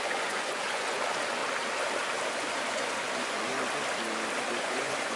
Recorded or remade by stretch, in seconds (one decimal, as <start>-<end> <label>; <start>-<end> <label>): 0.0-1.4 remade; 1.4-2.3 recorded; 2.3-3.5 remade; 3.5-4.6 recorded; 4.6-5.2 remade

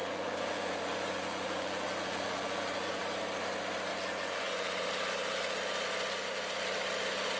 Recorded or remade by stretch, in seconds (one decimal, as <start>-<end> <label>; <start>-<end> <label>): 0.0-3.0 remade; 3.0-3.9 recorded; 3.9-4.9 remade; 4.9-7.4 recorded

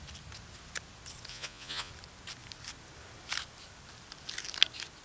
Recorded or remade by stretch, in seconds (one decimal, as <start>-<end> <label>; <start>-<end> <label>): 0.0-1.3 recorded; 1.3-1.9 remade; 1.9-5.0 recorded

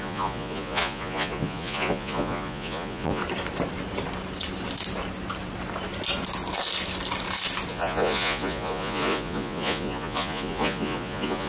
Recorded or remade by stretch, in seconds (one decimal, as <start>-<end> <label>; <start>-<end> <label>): 0.0-3.2 remade; 3.2-7.7 recorded; 7.7-11.5 remade

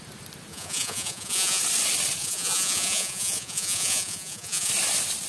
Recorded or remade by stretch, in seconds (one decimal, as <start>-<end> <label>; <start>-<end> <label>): 0.0-0.5 recorded; 0.5-1.6 remade; 1.6-2.2 recorded; 2.2-4.7 remade; 4.7-5.3 recorded